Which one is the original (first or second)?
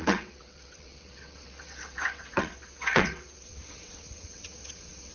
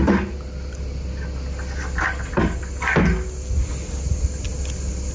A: second